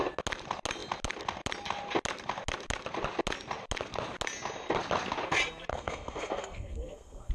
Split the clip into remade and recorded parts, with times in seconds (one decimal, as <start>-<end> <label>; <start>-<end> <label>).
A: 0.0-5.7 recorded; 5.7-7.3 remade